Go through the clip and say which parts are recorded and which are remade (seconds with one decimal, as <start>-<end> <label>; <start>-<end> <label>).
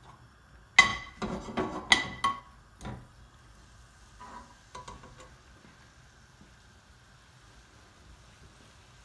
0.0-9.0 recorded